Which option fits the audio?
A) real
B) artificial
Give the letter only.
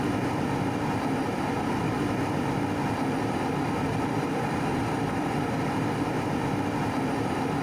B